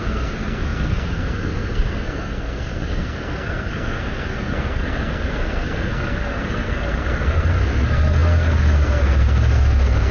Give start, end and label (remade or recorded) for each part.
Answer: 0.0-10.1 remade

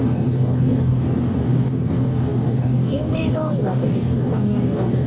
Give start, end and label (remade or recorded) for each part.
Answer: 0.0-5.1 remade

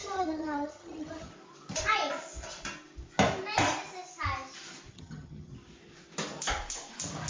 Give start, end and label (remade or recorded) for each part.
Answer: 0.0-1.3 remade; 1.3-4.9 recorded; 4.9-5.5 remade; 5.5-7.3 recorded

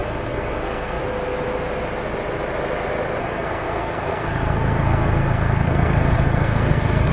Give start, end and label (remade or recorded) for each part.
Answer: 0.0-1.0 remade; 1.0-3.2 recorded; 3.2-7.1 remade

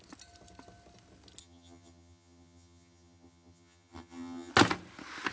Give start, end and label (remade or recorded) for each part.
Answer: 0.0-1.4 recorded; 1.4-4.5 remade; 4.5-5.3 recorded

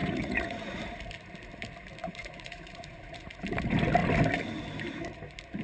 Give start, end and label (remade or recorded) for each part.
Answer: 0.0-0.8 remade; 0.8-2.0 recorded; 2.0-3.4 remade; 3.4-5.6 recorded